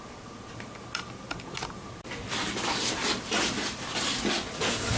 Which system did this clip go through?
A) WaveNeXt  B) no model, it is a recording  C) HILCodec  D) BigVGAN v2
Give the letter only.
B